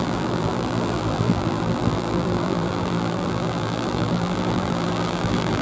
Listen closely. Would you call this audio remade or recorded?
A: remade